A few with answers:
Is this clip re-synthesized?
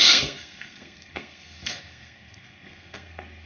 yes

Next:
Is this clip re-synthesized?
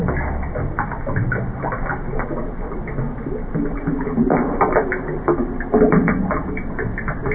no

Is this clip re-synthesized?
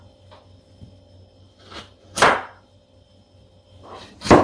no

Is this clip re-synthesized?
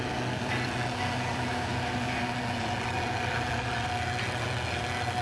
no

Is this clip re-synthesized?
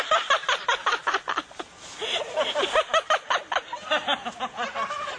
no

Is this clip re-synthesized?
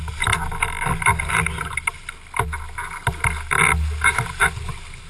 no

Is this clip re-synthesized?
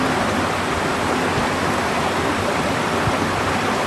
no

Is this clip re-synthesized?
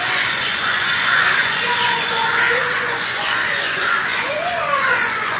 yes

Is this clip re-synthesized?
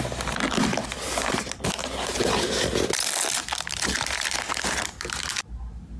no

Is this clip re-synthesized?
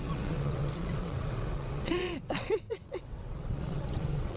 yes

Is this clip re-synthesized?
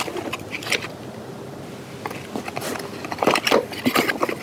no